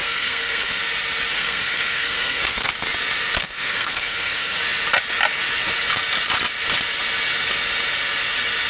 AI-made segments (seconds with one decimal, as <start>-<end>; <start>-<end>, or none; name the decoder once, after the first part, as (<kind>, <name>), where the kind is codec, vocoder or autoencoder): 0.0-0.8 (codec, SNAC); 1.3-2.7; 3.4-4.6